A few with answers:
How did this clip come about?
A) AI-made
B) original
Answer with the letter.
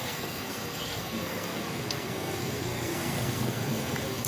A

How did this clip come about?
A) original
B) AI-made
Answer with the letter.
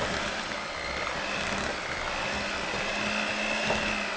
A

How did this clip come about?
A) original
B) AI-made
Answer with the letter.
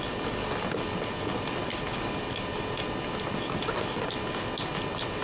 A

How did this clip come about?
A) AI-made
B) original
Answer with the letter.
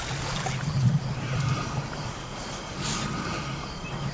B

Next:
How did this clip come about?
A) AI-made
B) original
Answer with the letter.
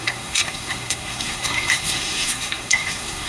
A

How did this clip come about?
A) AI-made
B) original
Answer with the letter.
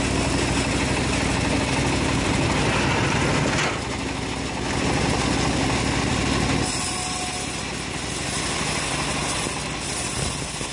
B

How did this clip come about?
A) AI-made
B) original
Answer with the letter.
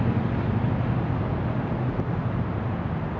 B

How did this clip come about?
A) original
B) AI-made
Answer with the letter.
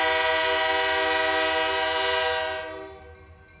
A